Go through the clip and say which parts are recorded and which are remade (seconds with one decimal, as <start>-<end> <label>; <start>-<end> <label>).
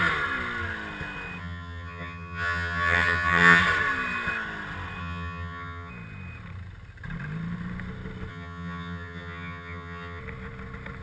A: 0.0-1.4 recorded; 1.4-3.6 remade; 3.6-5.0 recorded; 5.0-5.9 remade; 5.9-8.3 recorded; 8.3-10.2 remade; 10.2-11.0 recorded